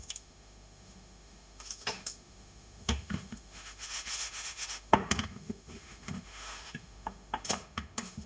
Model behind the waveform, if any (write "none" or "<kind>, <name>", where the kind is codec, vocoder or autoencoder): autoencoder, DAC-VAE